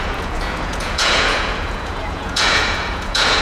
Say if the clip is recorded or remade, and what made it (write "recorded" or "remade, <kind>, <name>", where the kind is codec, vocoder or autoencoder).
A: remade, vocoder, Vocos